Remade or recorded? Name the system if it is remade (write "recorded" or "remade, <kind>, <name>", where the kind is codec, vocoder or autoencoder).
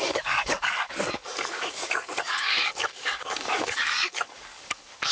remade, codec, DAC